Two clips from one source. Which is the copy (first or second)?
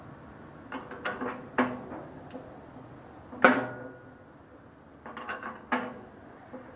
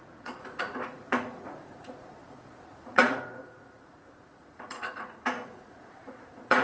second